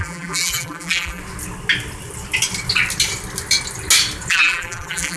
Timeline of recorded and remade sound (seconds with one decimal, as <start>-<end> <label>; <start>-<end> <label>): 0.0-1.2 remade; 1.2-4.3 recorded; 4.3-5.2 remade